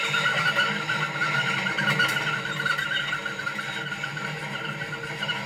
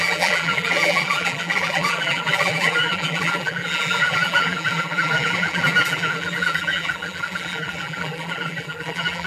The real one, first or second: first